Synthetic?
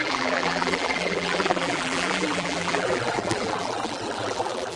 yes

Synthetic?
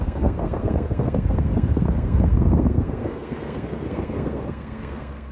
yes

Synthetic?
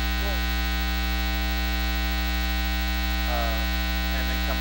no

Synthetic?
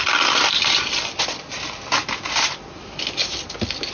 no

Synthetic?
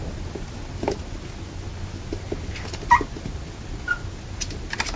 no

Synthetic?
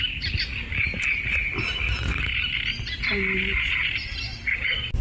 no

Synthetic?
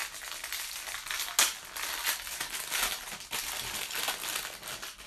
no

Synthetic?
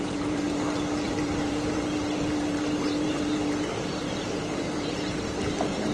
yes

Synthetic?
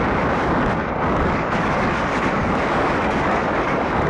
yes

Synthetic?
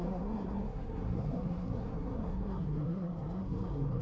yes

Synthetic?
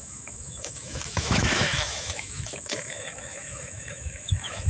yes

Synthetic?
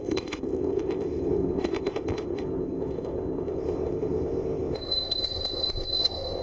yes